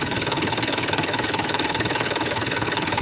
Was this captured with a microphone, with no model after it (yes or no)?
no